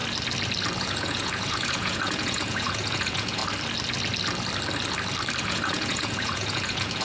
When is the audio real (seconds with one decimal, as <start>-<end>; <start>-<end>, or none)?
0.0-0.8; 3.4-5.4